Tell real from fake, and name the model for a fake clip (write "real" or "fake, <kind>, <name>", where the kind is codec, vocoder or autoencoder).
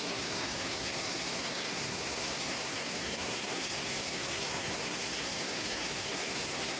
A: fake, codec, SNAC